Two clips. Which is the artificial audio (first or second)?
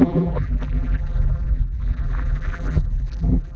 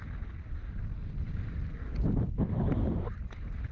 first